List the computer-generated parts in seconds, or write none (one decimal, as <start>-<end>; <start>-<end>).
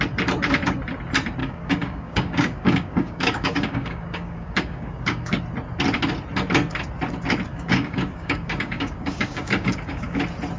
1.4-5.4; 7.5-10.2